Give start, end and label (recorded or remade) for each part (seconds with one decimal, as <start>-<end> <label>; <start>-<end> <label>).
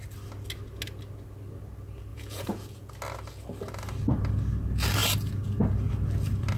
0.0-2.1 recorded; 2.1-2.9 remade; 2.9-6.6 recorded